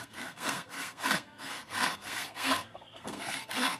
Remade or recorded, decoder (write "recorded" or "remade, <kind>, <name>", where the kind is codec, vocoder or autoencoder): remade, codec, SNAC